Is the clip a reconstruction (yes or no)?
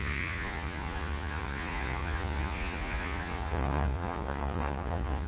yes